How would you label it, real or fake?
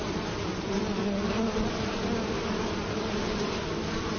fake